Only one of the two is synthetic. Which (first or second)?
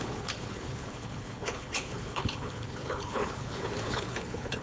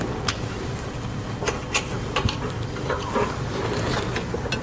first